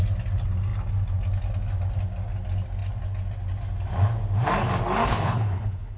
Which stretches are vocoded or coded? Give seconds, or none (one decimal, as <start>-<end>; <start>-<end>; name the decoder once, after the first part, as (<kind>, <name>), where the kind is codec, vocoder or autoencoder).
5.1-6.0 (codec, HILCodec)